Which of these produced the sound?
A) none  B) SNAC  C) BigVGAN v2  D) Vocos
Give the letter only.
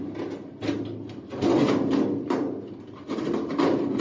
A